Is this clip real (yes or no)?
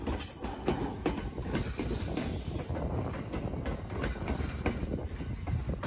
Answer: yes